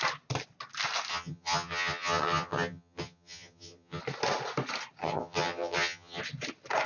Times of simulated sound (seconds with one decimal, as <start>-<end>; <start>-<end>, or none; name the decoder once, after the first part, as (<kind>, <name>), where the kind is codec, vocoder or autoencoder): 1.1-4.0 (vocoder, HiFi-GAN); 5.0-6.2

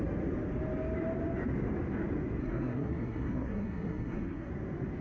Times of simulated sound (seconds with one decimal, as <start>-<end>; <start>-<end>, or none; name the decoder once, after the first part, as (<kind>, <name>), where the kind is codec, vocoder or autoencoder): 2.4-4.5 (codec, SNAC)

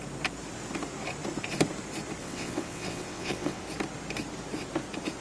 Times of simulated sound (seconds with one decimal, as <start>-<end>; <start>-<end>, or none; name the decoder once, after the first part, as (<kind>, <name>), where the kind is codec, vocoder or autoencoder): 2.2-3.6 (vocoder, WaveNeXt)

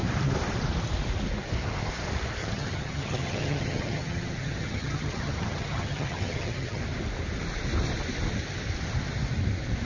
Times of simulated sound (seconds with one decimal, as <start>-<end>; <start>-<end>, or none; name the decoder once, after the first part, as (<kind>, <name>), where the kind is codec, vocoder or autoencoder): 2.4-6.8 (vocoder, HiFi-GAN)

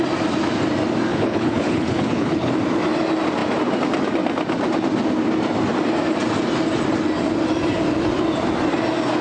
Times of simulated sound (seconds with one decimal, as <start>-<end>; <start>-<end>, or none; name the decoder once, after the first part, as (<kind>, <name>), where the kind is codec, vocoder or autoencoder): 1.1-2.5 (codec, HILCodec)

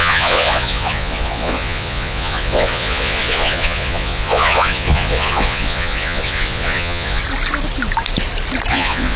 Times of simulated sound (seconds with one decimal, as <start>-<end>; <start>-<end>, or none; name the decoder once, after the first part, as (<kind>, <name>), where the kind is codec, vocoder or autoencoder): 0.0-7.2 (vocoder, Vocos); 8.7-9.2

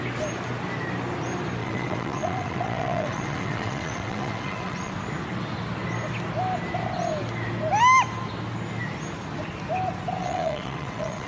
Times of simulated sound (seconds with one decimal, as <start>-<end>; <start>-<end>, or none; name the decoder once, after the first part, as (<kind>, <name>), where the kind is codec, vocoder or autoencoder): 1.6-4.9 (vocoder, WaveNeXt); 10.2-11.3

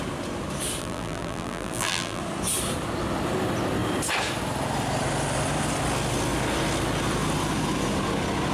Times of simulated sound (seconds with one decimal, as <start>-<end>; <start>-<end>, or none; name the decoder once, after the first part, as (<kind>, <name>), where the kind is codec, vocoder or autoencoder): 0.8-2.2 (vocoder, BigVGAN v2)